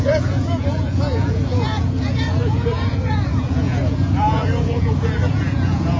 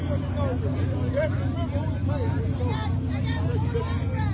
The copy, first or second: first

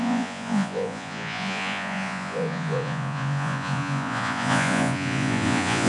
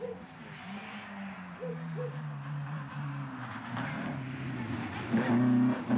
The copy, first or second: first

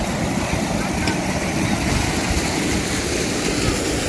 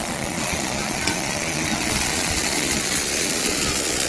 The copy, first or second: second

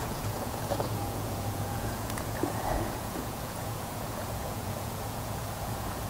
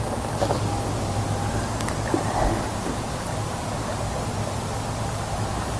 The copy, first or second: first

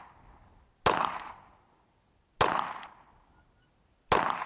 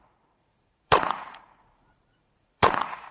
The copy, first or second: second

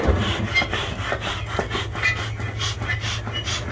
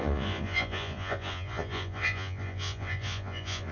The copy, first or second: second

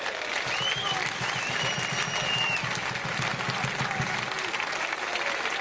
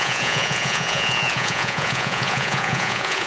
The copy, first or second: second